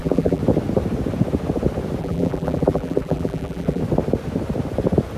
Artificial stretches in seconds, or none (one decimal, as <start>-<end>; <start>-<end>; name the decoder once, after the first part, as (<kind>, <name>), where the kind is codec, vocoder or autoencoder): 0.0-0.4 (vocoder, BigVGAN v2); 2.0-3.8